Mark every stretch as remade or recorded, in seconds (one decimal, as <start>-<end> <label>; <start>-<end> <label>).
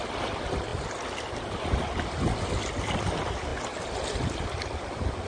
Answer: 0.0-5.3 recorded